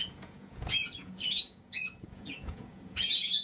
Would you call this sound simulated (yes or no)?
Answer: yes